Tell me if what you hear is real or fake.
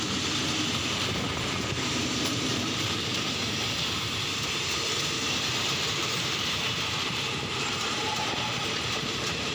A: fake